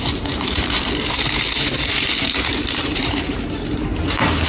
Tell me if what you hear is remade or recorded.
remade